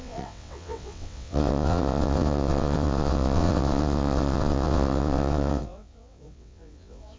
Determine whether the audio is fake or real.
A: fake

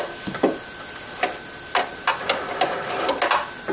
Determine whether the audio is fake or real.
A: real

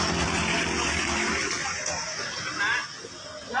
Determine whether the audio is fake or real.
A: real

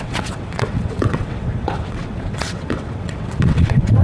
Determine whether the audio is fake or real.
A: fake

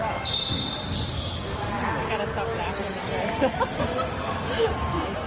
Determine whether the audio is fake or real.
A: real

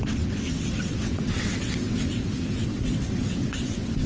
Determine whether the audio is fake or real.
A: fake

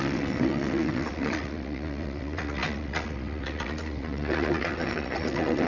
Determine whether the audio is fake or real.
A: fake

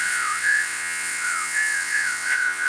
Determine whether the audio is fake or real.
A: fake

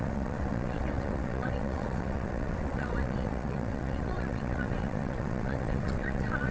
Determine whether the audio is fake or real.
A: fake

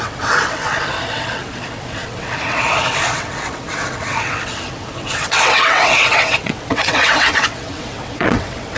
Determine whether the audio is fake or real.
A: fake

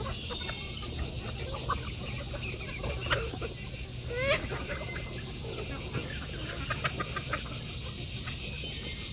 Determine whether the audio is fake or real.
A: real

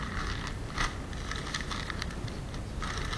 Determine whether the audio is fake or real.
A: real